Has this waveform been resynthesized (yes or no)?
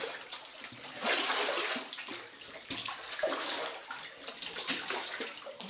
no